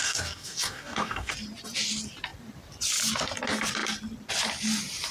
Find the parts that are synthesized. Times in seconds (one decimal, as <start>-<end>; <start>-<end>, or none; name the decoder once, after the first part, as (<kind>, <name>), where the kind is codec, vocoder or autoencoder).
0.0-1.3 (codec, DAC)